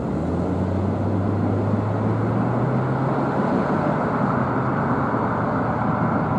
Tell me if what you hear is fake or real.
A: real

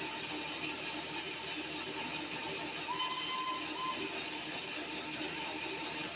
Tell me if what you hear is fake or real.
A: real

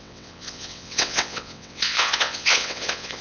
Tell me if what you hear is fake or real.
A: fake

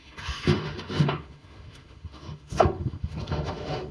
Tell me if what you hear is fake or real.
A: fake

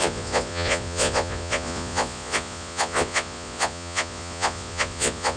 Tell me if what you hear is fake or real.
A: fake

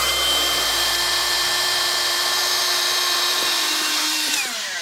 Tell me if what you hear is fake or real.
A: fake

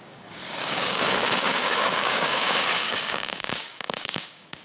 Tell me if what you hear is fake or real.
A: fake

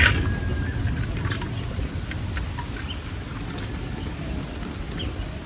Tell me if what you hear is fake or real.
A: real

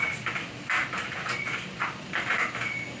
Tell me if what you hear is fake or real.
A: real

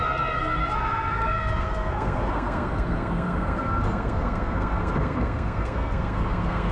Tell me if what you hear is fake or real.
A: fake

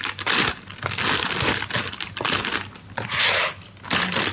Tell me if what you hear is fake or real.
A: real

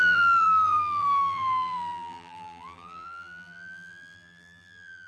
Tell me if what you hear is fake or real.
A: fake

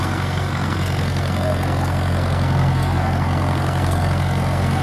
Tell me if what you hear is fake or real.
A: fake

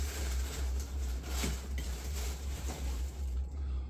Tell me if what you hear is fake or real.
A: fake